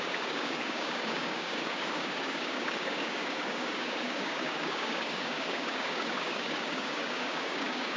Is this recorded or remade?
remade